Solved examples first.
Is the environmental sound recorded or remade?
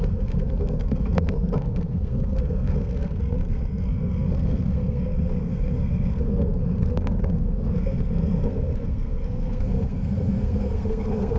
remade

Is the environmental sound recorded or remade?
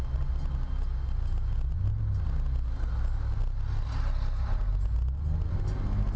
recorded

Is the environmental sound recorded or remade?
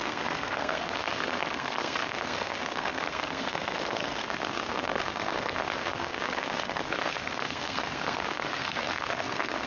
remade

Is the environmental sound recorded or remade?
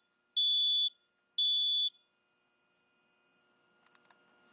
recorded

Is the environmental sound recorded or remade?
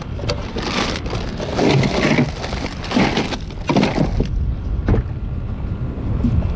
recorded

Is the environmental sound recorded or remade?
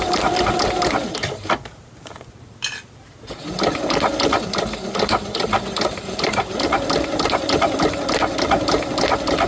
recorded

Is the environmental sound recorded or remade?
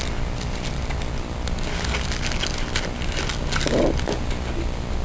recorded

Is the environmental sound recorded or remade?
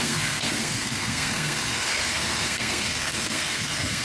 remade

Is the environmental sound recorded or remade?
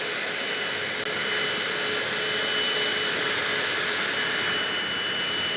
recorded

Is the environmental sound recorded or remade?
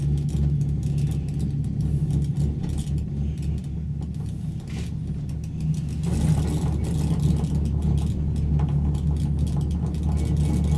recorded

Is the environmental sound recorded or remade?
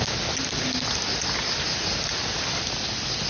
recorded